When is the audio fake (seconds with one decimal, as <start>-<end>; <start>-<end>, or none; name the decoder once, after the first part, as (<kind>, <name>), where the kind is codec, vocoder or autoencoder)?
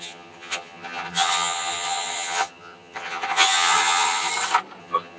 0.0-4.3 (vocoder, HiFi-GAN); 4.8-5.2